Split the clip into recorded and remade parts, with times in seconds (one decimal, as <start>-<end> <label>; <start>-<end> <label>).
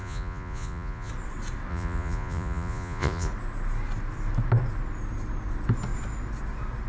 0.0-1.1 remade; 1.1-1.7 recorded; 1.7-3.3 remade; 3.3-6.9 recorded